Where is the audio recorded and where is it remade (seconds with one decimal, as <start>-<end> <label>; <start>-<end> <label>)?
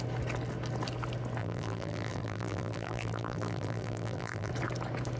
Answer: 0.0-1.4 recorded; 1.4-4.5 remade; 4.5-5.2 recorded